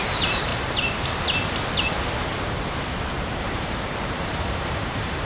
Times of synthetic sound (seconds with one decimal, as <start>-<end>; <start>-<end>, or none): 0.0-0.5; 3.4-5.3